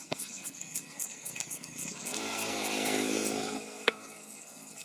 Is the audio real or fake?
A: fake